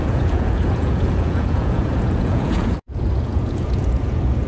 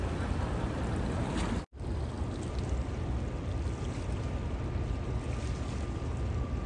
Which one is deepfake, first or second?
first